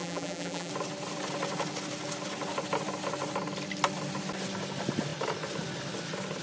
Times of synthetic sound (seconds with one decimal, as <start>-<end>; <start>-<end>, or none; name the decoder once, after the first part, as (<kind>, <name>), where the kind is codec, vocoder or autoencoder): 0.0-0.7 (vocoder, BigVGAN v2)